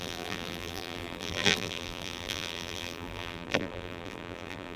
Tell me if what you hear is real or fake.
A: fake